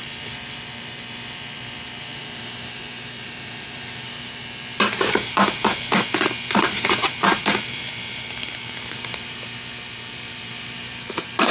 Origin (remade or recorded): remade